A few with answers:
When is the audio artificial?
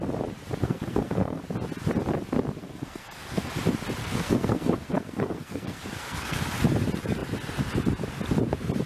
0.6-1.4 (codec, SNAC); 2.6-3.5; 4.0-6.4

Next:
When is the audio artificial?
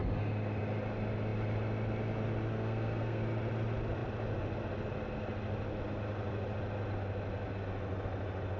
2.5-3.2 (codec, SNAC)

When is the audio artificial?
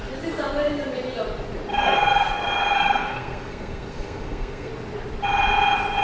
1.7-4.7 (codec, SNAC)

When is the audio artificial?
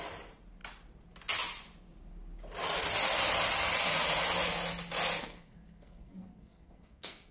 5.2-7.3 (codec, SNAC)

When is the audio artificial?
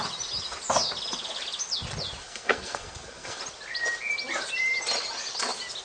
2.2-3.4 (codec, SNAC)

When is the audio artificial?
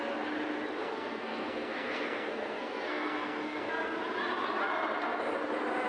0.8-3.9 (codec, SNAC)